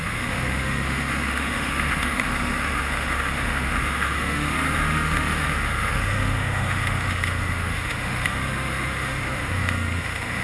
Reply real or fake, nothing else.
fake